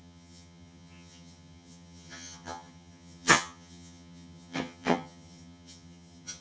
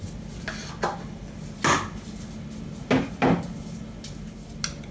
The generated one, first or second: first